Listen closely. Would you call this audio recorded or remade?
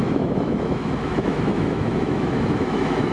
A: remade